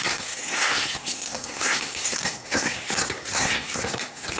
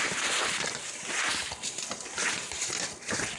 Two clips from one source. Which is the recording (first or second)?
second